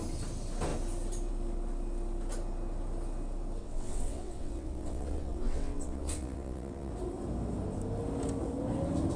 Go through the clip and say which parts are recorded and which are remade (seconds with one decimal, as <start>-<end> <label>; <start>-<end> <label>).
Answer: 0.0-3.6 recorded; 3.6-6.9 remade; 6.9-9.2 recorded